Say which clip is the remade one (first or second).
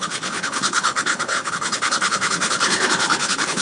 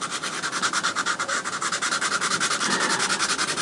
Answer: first